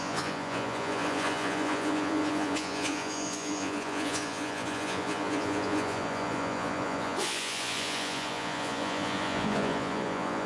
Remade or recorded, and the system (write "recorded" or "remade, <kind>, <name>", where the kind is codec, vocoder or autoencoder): remade, vocoder, Vocos